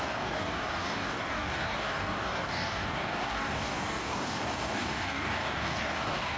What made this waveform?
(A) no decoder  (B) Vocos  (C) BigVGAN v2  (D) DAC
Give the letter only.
D